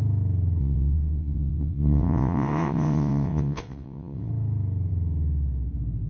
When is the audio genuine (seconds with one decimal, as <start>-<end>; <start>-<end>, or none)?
0.0-0.6; 4.3-6.1

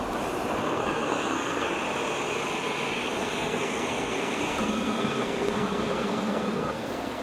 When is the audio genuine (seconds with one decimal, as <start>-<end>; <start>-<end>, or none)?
0.0-0.6; 1.7-3.2